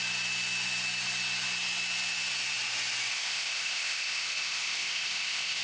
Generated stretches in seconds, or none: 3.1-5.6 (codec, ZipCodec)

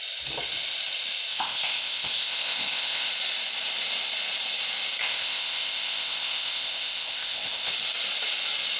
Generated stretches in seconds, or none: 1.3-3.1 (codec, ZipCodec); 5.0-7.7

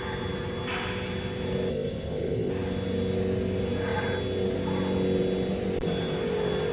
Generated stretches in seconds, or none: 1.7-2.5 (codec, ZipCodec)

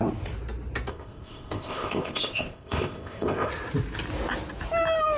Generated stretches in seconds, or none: 0.9-3.5 (codec, ZipCodec)

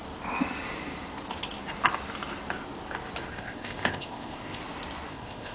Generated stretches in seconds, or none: 3.3-4.6 (codec, ZipCodec); 5.1-5.5

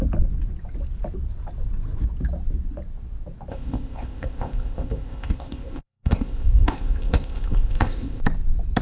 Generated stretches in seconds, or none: 3.5-8.2 (codec, ZipCodec)